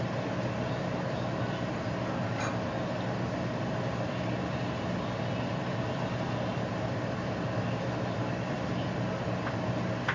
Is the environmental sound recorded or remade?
recorded